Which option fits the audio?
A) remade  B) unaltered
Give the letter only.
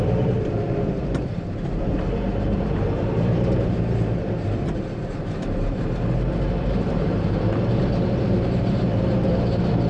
A